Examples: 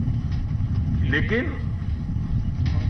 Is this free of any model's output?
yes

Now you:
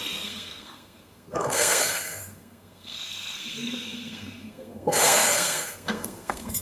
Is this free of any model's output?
no